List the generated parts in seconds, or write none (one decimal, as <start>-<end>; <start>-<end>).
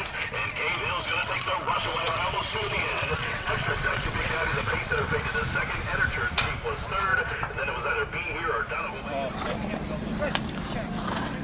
1.1-5.2